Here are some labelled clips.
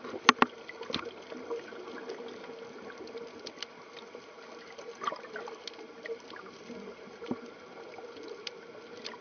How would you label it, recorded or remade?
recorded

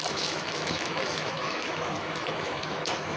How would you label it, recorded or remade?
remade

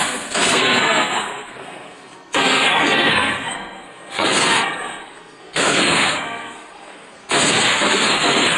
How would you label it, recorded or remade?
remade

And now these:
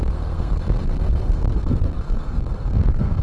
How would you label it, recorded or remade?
remade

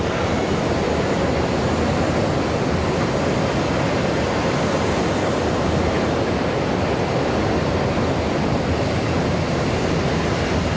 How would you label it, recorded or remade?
recorded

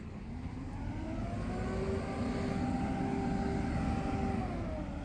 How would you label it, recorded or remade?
recorded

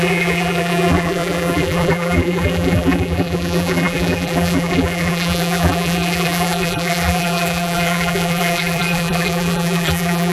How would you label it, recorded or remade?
remade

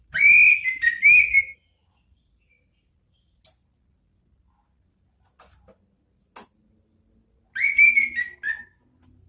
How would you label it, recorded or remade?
recorded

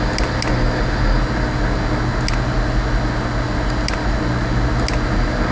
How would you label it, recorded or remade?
recorded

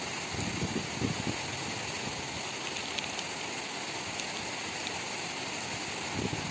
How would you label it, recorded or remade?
recorded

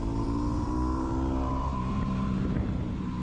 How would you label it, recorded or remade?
remade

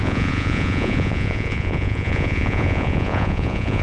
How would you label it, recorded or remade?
remade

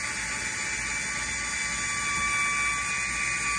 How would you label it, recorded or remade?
recorded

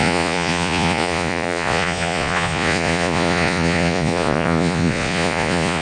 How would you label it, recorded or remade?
remade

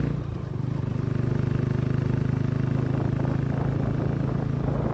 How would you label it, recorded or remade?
recorded